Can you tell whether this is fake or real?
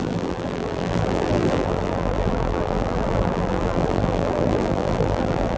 fake